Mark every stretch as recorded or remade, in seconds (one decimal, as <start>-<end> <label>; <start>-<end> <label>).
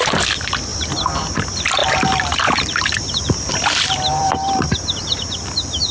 0.0-1.8 recorded; 1.8-3.5 remade; 3.5-5.9 recorded